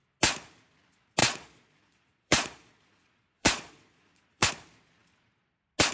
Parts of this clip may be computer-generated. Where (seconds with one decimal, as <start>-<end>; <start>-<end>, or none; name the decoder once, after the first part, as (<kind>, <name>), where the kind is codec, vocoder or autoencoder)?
1.2-4.5 (vocoder, Vocos)